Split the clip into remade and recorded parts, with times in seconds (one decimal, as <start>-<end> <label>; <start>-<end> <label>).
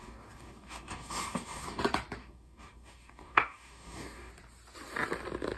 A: 0.0-1.8 remade; 1.8-2.2 recorded; 2.2-4.3 remade; 4.3-5.6 recorded